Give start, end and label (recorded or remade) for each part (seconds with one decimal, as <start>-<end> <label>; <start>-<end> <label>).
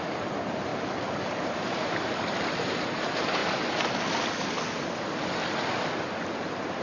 0.0-0.7 remade; 0.7-1.4 recorded; 1.4-3.4 remade; 3.4-6.8 recorded